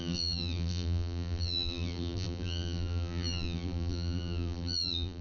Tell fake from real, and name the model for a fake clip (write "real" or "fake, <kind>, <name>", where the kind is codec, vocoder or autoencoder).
fake, vocoder, BigVGAN v2